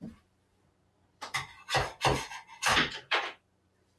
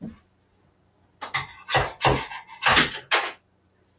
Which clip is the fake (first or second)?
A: first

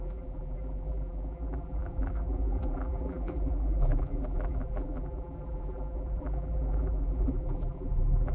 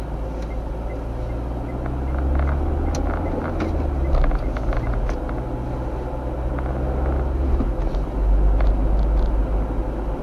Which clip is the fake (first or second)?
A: first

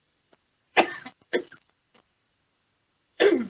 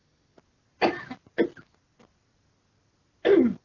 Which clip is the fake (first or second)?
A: first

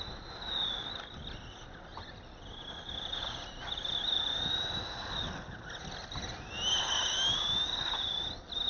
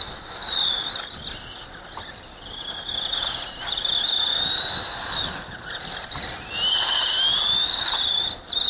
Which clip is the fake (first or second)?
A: second